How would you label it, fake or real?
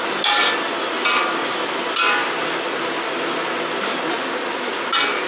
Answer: real